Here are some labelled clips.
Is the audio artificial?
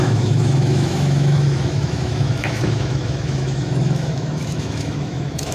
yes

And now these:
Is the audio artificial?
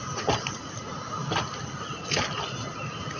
no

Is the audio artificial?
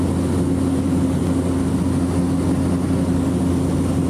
no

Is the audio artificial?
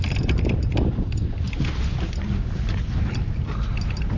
no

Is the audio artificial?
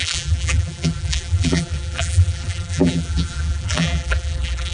yes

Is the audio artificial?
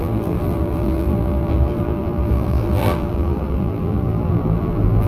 yes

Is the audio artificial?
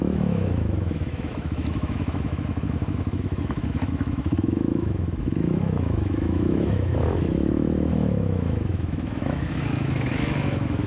yes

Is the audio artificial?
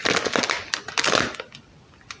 no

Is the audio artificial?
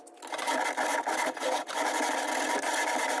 no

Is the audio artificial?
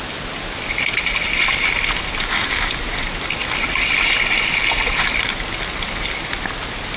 no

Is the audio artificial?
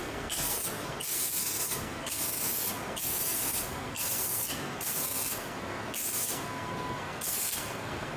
yes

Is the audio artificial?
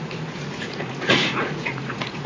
yes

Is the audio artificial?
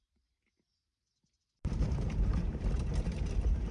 yes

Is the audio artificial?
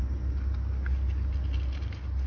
no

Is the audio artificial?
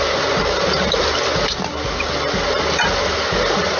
no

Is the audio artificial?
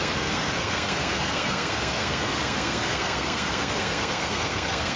yes